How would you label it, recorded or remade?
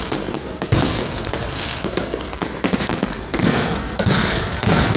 remade